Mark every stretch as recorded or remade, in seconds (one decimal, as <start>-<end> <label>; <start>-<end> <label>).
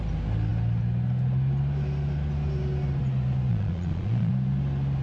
0.0-3.5 recorded; 3.5-4.3 remade; 4.3-5.0 recorded